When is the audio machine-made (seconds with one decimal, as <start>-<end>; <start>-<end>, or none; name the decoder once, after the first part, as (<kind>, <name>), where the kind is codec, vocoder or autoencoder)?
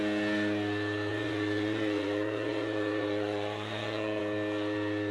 1.1-4.2 (vocoder, Vocos)